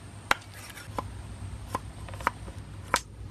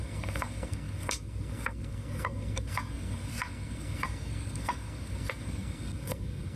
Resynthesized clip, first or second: second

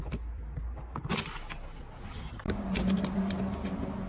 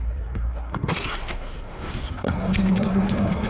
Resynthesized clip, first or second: second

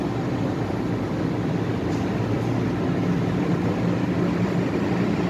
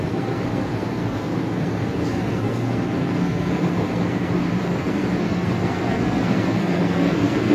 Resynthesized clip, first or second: second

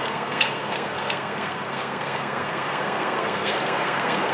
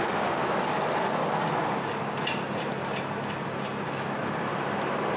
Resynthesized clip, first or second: first